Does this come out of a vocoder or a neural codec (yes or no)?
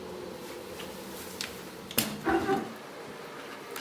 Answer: no